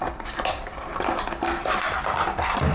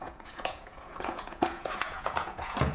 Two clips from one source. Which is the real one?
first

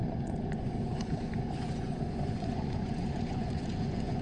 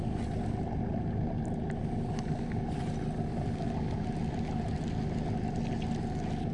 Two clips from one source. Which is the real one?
second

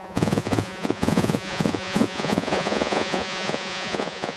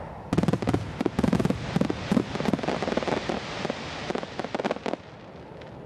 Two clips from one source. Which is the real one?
second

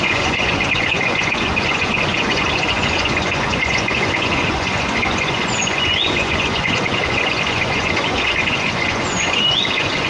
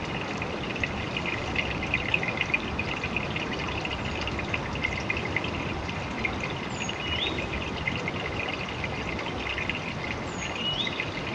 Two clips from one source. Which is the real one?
second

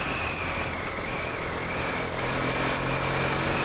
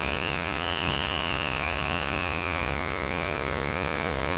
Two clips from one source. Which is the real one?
first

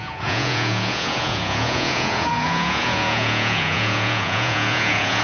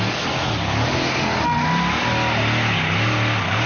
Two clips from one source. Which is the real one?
second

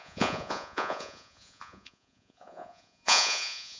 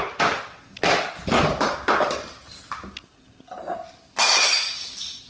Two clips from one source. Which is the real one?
second